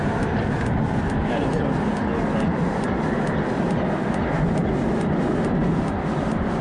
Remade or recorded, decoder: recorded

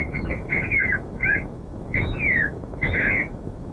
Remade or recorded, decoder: remade, autoencoder, DAC-VAE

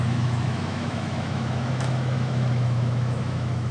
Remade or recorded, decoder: remade, autoencoder, DAC-VAE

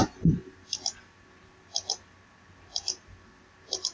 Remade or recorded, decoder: recorded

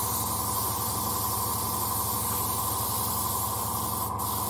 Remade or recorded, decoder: recorded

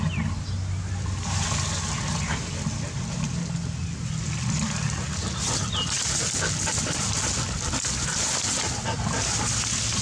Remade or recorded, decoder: recorded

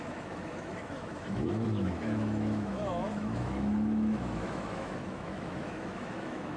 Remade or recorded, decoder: remade, autoencoder, DAC-VAE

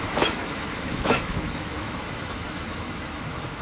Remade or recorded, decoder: remade, autoencoder, DAC-VAE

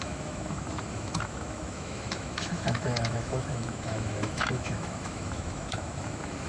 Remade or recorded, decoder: remade, autoencoder, DAC-VAE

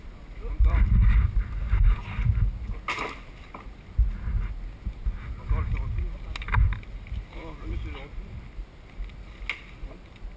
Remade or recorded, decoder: recorded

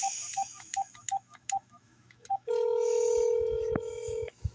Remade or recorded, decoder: remade, autoencoder, DAC-VAE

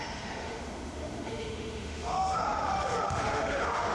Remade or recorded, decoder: remade, autoencoder, DAC-VAE